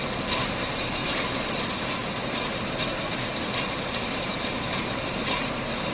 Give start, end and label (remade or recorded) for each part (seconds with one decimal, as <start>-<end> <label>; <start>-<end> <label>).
0.0-5.9 recorded